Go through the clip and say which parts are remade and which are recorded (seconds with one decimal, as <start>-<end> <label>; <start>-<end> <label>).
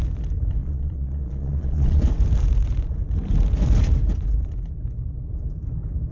0.0-0.6 recorded; 0.6-2.0 remade; 2.0-6.1 recorded